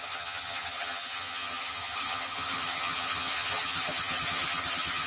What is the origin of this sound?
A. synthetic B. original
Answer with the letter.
A